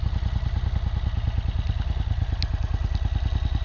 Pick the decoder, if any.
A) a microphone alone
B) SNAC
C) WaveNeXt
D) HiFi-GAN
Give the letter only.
A